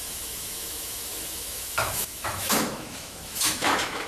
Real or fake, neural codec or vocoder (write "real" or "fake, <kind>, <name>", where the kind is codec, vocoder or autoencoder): fake, autoencoder, DAC-VAE